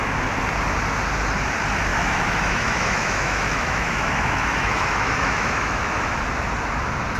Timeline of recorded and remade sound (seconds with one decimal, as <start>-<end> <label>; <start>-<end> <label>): 0.0-1.9 recorded; 1.9-6.2 remade; 6.2-7.2 recorded